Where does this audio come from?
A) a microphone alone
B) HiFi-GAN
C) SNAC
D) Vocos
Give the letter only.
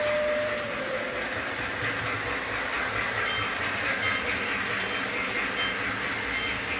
A